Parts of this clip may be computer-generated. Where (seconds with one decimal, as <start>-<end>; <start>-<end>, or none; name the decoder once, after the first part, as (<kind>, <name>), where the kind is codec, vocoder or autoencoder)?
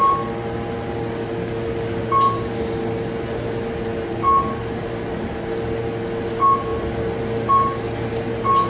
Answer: none